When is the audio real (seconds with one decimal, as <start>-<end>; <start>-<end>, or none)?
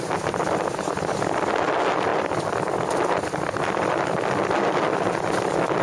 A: 0.0-2.1